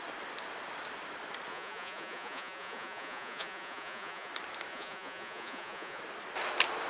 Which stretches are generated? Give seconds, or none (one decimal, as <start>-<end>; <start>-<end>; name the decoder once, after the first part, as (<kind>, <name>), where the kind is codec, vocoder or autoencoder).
1.5-4.3 (vocoder, Vocos); 4.7-6.0